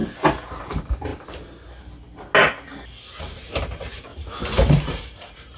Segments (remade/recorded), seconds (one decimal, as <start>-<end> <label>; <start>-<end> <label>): 0.0-0.6 recorded; 0.6-1.1 remade; 1.1-3.2 recorded; 3.2-4.1 remade; 4.1-4.7 recorded; 4.7-5.6 remade